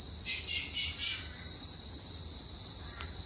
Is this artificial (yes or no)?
no